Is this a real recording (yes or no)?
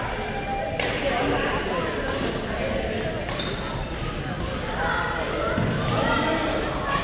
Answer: yes